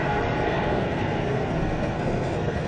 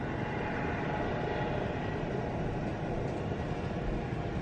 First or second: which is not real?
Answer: first